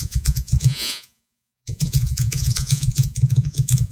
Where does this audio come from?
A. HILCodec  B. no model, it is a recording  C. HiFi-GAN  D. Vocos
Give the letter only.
D